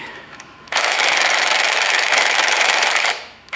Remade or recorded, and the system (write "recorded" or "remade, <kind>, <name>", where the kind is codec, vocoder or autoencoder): remade, autoencoder, DAC-VAE